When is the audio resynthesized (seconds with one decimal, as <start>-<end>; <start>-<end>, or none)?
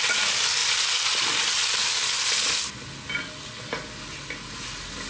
none